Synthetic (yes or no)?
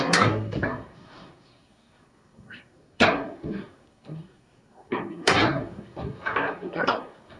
yes